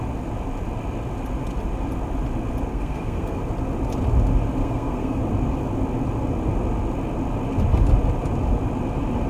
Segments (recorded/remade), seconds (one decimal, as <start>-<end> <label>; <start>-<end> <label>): 0.0-2.7 recorded; 2.7-3.4 remade; 3.4-4.6 recorded; 4.6-5.2 remade; 5.2-9.3 recorded